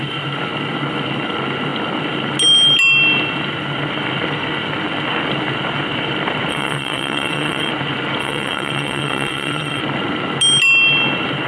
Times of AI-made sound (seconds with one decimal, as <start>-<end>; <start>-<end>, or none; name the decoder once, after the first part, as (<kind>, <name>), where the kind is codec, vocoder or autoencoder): 6.5-7.7 (vocoder, WaveNeXt); 8.2-9.8